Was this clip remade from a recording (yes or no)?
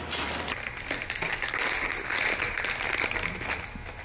no